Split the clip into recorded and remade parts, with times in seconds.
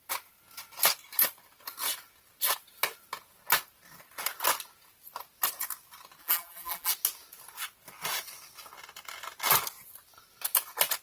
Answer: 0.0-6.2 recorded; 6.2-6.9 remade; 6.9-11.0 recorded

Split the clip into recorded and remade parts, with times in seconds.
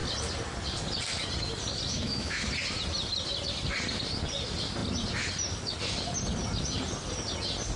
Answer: 0.0-1.9 recorded; 1.9-2.5 remade; 2.5-7.8 recorded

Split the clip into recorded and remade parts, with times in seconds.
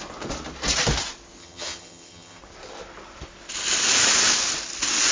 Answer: 0.0-1.4 recorded; 1.4-2.4 remade; 2.4-5.1 recorded